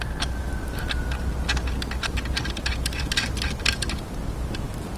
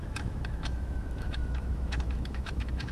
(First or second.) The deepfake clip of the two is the second